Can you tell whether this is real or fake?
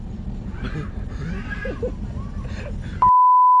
real